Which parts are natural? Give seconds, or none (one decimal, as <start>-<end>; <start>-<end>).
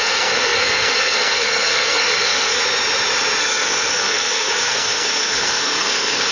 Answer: 2.6-3.4